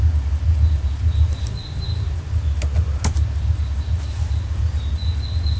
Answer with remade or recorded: recorded